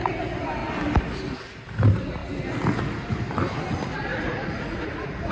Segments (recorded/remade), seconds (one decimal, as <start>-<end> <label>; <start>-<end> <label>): 0.0-4.1 recorded; 4.1-5.3 remade